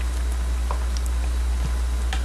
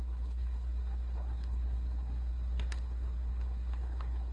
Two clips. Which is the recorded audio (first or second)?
first